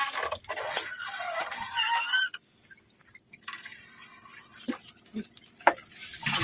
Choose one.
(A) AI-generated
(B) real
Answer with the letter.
B